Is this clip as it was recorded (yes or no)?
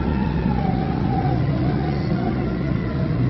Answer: no